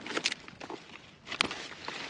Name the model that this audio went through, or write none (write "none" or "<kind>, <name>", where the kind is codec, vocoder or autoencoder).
none